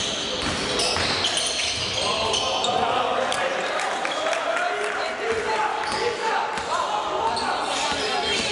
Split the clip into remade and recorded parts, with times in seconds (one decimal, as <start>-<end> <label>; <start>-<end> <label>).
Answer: 0.0-5.7 recorded; 5.7-6.3 remade; 6.3-8.5 recorded